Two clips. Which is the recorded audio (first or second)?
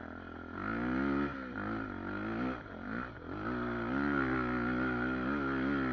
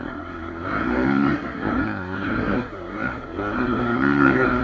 first